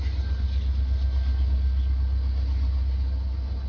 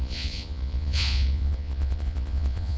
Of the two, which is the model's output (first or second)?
second